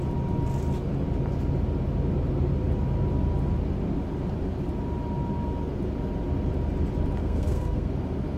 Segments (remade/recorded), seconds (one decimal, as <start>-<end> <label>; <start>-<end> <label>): 0.0-7.2 recorded; 7.2-7.9 remade; 7.9-8.4 recorded